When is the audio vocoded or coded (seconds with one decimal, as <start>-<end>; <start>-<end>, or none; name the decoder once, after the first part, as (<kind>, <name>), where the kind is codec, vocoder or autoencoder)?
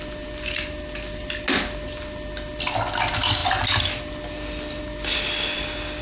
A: none